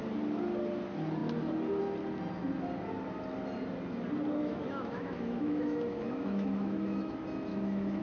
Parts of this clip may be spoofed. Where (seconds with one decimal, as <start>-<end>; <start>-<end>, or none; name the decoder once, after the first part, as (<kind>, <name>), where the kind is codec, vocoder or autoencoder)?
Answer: 4.4-7.1 (autoencoder, DAC-VAE); 7.5-8.0